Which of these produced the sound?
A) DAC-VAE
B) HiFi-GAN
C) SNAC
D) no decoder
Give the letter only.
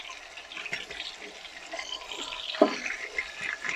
D